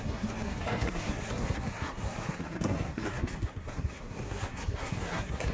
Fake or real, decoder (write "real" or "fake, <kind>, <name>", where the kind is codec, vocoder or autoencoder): fake, codec, SNAC